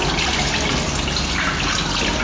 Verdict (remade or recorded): recorded